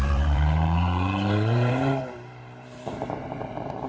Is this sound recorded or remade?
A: remade